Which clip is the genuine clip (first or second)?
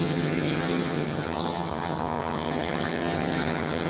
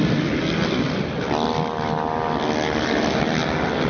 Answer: second